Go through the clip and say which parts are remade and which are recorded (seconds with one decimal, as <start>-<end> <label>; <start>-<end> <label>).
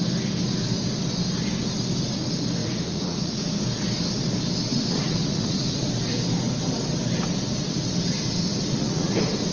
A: 0.0-2.6 recorded; 2.6-3.5 remade; 3.5-4.7 recorded; 4.7-5.9 remade; 5.9-8.5 recorded; 8.5-9.1 remade; 9.1-9.5 recorded